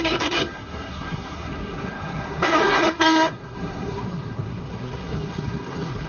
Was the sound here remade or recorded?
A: remade